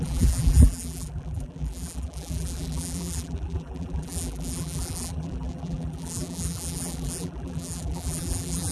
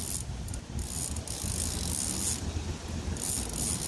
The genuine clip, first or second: second